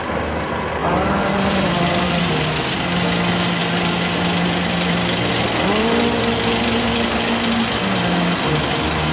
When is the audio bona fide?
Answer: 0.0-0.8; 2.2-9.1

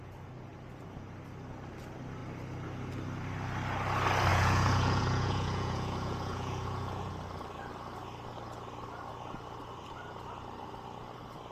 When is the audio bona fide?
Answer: 0.0-4.3; 7.1-11.5